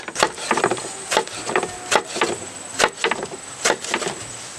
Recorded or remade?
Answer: recorded